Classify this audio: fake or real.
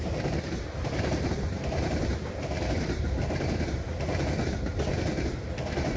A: fake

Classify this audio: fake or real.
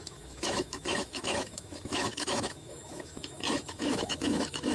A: fake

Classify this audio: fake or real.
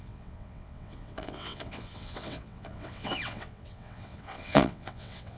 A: fake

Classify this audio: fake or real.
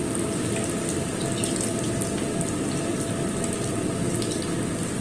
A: real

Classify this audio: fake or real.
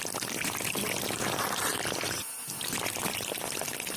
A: real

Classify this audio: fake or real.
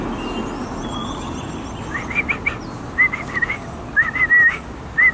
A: real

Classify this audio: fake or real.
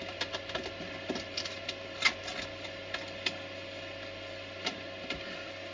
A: real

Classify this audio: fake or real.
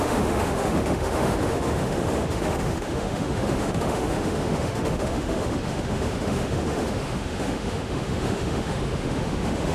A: fake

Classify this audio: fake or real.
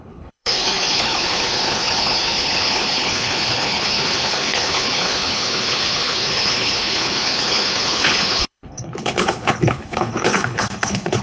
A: fake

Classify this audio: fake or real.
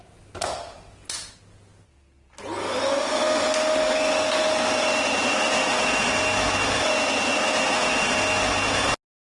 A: real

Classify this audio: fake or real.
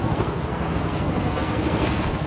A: fake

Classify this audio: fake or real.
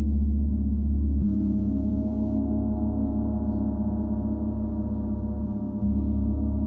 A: real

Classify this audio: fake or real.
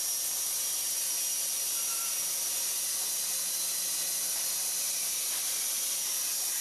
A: real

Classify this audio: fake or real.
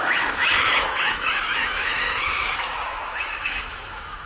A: fake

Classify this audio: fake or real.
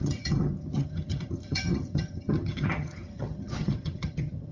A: fake